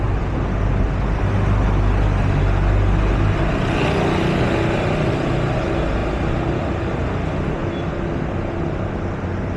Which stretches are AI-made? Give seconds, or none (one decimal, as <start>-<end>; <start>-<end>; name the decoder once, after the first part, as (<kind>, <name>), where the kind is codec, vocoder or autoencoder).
none